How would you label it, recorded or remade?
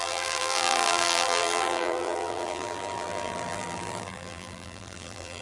remade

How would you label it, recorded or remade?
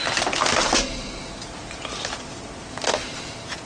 recorded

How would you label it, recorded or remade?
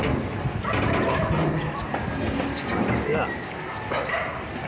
recorded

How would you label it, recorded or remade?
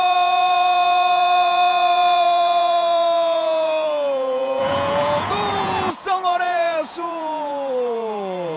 remade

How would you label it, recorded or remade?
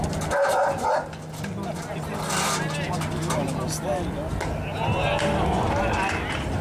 recorded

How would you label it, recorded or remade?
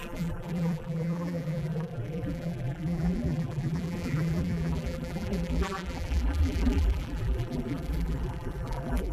remade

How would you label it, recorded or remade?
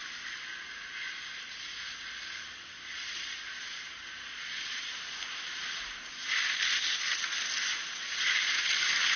recorded